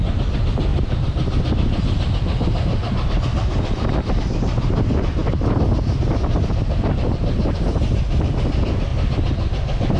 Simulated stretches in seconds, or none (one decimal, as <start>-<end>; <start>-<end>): 0.7-3.1; 5.2-6.7